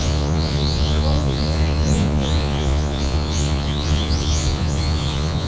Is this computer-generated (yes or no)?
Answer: yes